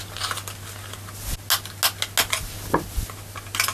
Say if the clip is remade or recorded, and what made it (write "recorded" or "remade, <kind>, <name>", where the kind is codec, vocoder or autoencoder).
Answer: recorded